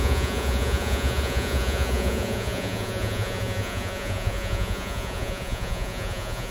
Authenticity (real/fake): fake